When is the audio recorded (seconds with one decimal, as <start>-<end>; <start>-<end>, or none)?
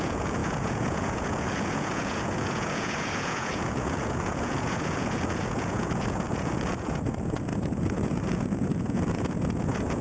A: none